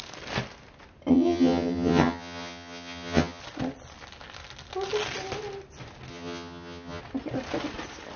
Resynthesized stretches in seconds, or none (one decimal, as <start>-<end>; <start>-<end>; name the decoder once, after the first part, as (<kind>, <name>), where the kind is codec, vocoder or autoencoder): 1.1-3.4 (vocoder, HiFi-GAN); 6.1-7.0